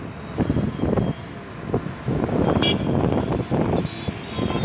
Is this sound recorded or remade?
recorded